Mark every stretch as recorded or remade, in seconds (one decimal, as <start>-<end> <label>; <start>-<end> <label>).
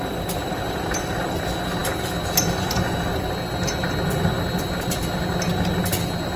0.0-0.4 recorded; 0.4-1.4 remade; 1.4-6.4 recorded